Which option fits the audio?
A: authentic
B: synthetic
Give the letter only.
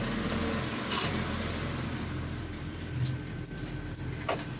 B